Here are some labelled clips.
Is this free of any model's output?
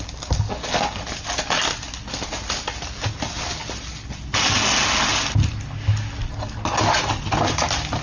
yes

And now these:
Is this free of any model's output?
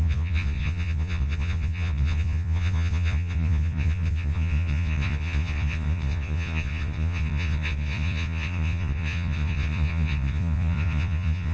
no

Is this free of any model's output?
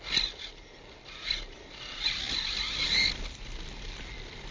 yes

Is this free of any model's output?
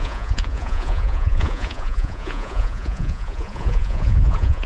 no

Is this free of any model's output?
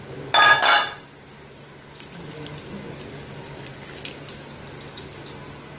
yes